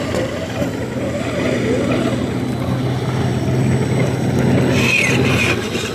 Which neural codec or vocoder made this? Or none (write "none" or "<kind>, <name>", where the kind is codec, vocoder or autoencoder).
none